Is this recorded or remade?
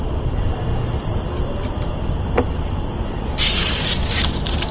recorded